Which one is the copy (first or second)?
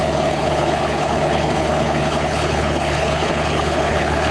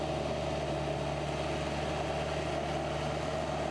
first